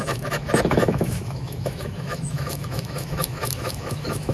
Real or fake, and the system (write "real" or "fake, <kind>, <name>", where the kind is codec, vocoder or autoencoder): fake, autoencoder, DAC-VAE